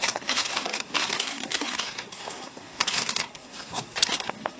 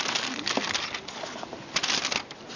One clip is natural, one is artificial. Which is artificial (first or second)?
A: first